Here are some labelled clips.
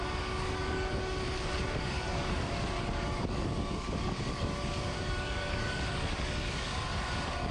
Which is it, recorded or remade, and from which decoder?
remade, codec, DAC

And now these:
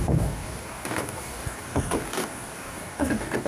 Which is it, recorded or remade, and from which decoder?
remade, codec, DAC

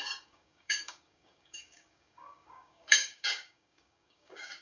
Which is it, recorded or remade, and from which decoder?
remade, codec, DAC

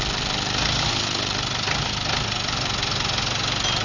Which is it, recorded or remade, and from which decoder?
recorded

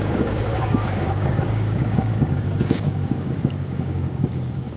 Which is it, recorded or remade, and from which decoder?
remade, codec, DAC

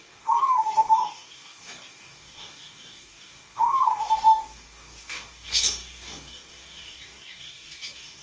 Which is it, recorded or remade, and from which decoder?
remade, codec, DAC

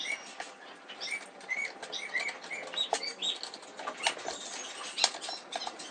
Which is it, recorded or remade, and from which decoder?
recorded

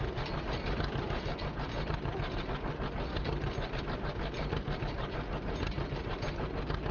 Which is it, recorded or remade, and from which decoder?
recorded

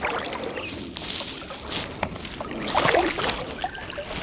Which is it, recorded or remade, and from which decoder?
recorded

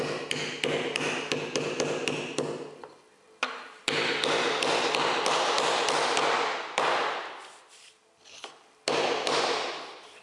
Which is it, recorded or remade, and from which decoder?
recorded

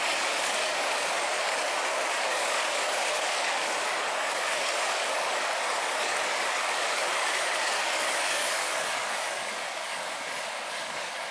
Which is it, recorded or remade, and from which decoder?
remade, codec, DAC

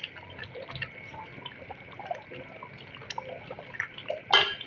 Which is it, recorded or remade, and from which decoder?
recorded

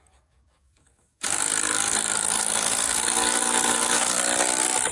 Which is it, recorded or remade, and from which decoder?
remade, codec, DAC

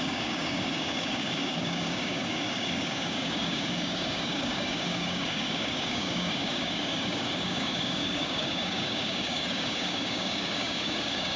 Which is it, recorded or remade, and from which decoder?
remade, codec, DAC